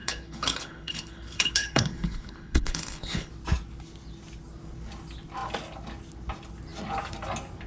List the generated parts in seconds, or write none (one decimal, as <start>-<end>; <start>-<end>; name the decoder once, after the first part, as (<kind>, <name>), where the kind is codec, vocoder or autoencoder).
0.0-3.3 (codec, HILCodec)